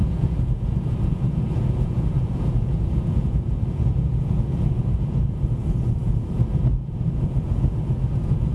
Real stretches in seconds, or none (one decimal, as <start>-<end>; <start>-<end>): none